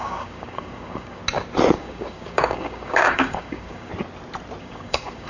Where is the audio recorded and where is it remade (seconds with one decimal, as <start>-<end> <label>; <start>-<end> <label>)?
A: 0.0-1.2 remade; 1.2-1.8 recorded; 1.8-3.9 remade; 3.9-4.6 recorded; 4.6-5.3 remade